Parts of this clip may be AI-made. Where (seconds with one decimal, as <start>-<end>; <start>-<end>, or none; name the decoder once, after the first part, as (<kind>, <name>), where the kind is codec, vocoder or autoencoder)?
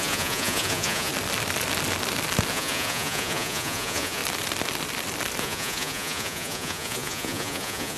0.0-1.1 (vocoder, Vocos); 2.5-4.2; 5.4-8.0